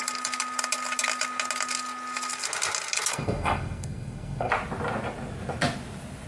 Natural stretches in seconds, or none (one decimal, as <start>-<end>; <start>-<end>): 0.0-3.1; 4.5-6.3